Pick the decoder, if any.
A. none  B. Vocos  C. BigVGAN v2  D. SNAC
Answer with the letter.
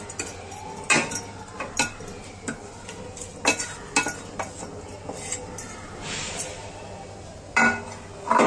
A